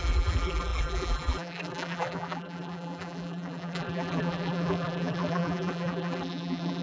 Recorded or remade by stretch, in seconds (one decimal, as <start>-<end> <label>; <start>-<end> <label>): 0.0-6.8 remade